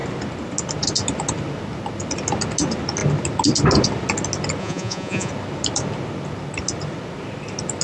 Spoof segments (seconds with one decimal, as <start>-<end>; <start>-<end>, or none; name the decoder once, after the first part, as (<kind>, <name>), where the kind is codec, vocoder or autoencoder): 4.6-5.3 (vocoder, Vocos)